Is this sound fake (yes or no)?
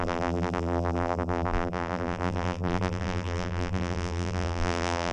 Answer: yes